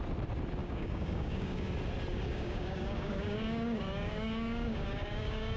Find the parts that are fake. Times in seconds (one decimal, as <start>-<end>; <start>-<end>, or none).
0.6-1.7; 2.1-5.6